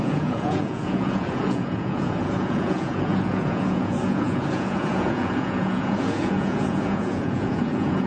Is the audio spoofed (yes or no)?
yes